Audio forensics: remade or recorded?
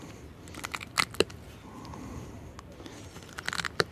recorded